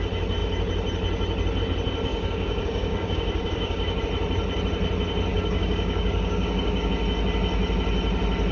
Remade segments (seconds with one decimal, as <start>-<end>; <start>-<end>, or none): 2.1-4.0; 5.3-6.9